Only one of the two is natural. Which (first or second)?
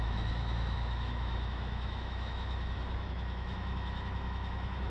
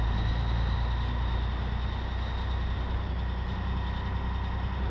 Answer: second